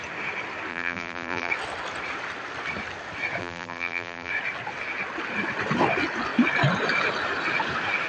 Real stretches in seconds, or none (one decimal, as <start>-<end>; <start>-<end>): 0.0-0.7; 1.5-3.4; 4.3-8.1